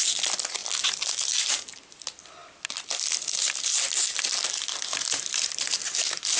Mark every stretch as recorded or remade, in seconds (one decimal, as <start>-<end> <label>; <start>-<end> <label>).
0.0-6.4 recorded